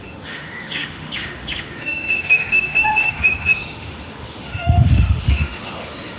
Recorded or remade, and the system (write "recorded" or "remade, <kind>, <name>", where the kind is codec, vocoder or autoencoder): remade, autoencoder, DAC-VAE